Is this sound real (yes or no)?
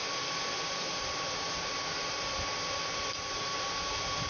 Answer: yes